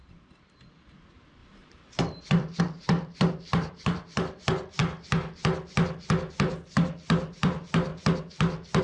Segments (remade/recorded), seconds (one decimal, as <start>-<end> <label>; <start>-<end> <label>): 0.0-4.8 remade; 4.8-6.3 recorded; 6.3-7.9 remade; 7.9-8.8 recorded